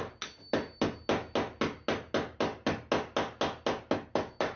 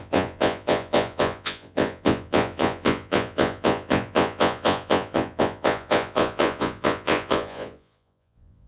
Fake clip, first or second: second